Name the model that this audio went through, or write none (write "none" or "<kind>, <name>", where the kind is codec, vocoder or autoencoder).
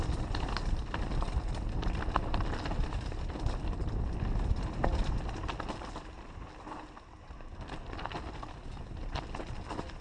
none